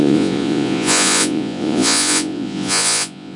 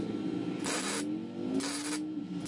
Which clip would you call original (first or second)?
second